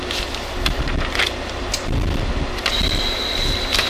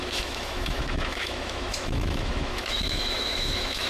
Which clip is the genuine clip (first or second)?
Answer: first